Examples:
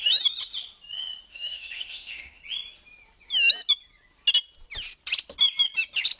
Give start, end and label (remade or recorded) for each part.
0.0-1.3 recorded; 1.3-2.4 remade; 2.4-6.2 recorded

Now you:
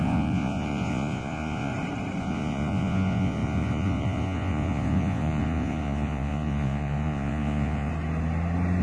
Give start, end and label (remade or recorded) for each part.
0.0-1.7 remade; 1.7-2.2 recorded; 2.2-7.9 remade; 7.9-8.8 recorded

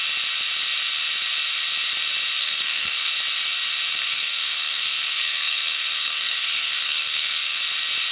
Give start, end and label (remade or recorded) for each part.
0.0-2.4 recorded; 2.4-3.1 remade; 3.1-4.0 recorded; 4.0-7.6 remade; 7.6-8.1 recorded

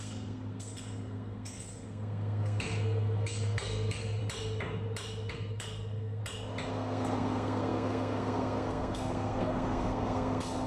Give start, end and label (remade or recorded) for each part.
0.0-4.2 remade; 4.2-5.3 recorded; 5.3-6.2 remade; 6.2-6.7 recorded; 6.7-10.7 remade

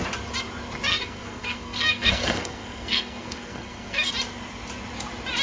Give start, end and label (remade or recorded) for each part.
0.0-0.9 recorded; 0.9-4.1 remade; 4.1-5.4 recorded

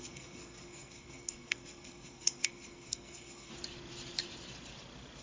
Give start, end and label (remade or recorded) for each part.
0.0-3.5 remade; 3.5-5.2 recorded

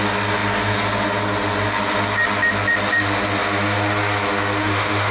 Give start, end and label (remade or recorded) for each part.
0.0-4.6 recorded; 4.6-5.1 remade